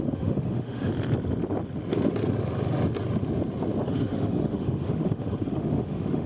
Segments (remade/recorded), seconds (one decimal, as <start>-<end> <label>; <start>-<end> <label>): 0.0-0.9 remade; 0.9-3.9 recorded; 3.9-6.3 remade